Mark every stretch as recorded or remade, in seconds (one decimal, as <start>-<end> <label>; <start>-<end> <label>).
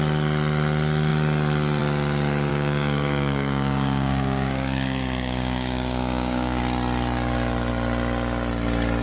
0.0-2.5 recorded; 2.5-6.6 remade; 6.6-9.0 recorded